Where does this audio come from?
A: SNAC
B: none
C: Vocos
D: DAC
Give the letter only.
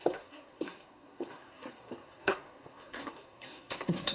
A